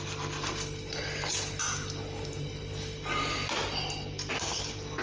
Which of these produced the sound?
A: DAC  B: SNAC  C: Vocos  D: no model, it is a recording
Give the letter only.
D